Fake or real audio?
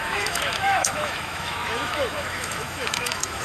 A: fake